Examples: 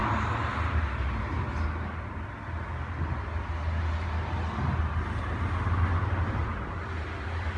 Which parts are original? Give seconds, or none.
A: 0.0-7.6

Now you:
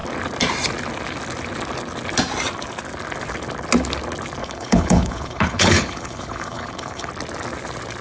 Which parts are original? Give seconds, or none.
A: 0.0-4.4; 7.1-8.0

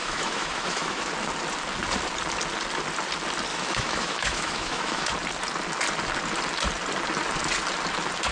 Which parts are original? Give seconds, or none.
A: 1.1-3.5; 5.1-8.3

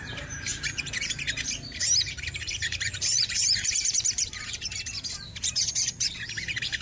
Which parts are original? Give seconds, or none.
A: none

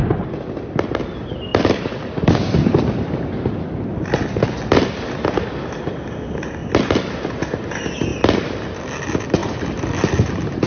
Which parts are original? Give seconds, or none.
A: 0.0-1.5; 4.1-6.6; 7.1-9.4

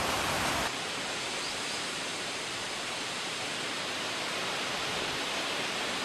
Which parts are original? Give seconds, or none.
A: none

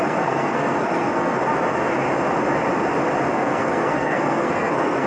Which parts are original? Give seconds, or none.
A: 1.4-3.3

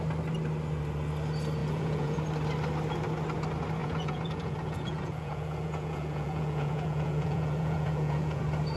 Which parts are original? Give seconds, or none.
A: 0.0-1.6; 2.2-3.8; 8.4-8.8